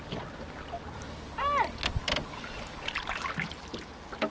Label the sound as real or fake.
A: real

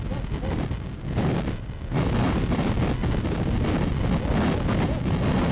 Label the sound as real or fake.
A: real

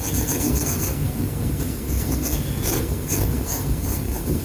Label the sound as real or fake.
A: fake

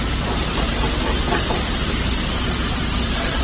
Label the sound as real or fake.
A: fake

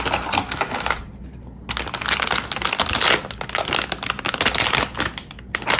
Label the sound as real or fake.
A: real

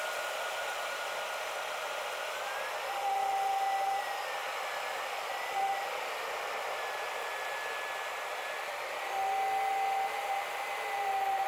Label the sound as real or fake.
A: real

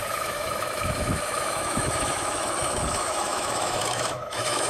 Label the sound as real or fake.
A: fake